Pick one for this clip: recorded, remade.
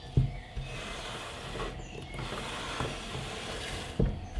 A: recorded